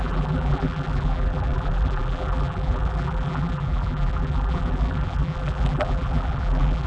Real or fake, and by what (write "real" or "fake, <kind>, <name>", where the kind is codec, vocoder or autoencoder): fake, vocoder, BigVGAN v2